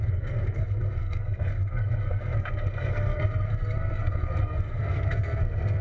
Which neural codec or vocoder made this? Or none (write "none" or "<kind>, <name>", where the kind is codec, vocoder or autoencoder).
codec, SNAC